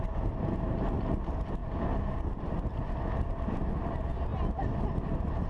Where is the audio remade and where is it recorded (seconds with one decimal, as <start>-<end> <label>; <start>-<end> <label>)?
0.0-5.5 recorded